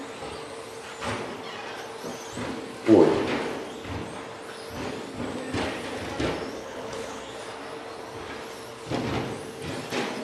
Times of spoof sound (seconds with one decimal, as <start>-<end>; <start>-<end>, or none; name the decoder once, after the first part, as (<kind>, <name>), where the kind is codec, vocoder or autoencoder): 6.6-7.2 (codec, HILCodec)